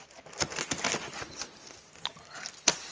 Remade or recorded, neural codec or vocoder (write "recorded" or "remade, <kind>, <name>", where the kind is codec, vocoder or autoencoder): recorded